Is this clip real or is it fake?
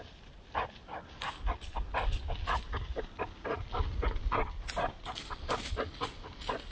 real